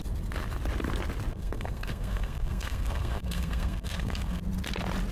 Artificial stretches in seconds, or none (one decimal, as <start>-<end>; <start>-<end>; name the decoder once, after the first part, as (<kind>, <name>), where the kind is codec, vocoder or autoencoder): 1.3-4.4 (codec, SNAC)